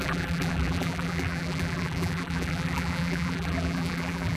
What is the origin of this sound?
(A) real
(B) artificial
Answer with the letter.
B